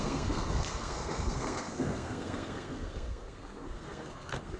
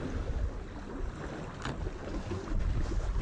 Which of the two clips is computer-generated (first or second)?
first